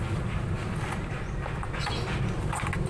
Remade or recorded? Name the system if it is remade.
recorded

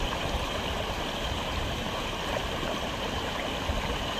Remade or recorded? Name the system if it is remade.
recorded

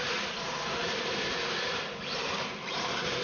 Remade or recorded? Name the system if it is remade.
recorded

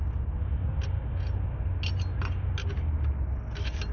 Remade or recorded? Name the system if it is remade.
recorded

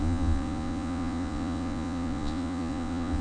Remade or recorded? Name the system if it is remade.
remade, vocoder, Vocos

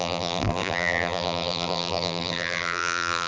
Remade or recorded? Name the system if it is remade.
remade, vocoder, BigVGAN v2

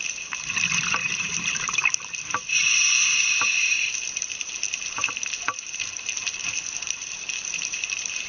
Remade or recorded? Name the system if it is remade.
remade, vocoder, BigVGAN v2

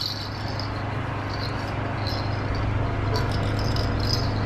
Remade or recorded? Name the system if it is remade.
recorded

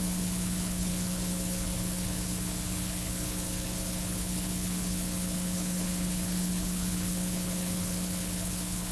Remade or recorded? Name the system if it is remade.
remade, codec, HILCodec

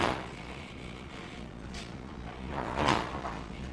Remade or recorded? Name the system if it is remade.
remade, vocoder, Vocos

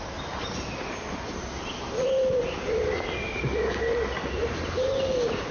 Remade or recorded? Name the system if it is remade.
recorded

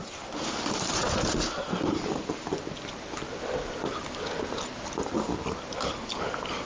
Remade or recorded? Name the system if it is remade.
recorded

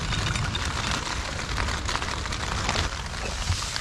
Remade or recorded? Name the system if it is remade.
recorded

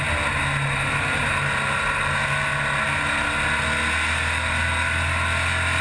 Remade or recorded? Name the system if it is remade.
recorded